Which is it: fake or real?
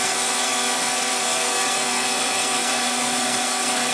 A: fake